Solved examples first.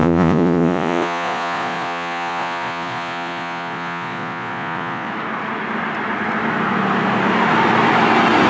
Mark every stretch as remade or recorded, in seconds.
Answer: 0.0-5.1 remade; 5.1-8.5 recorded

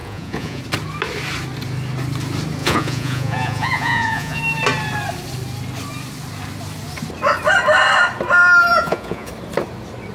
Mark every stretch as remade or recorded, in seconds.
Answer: 0.0-0.6 remade; 0.6-2.6 recorded; 2.6-4.4 remade; 4.4-8.7 recorded; 8.7-9.3 remade; 9.3-10.1 recorded

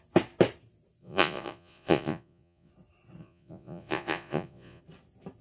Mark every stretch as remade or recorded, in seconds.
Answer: 0.0-1.0 recorded; 1.0-2.7 remade; 2.7-3.2 recorded; 3.2-4.8 remade; 4.8-5.4 recorded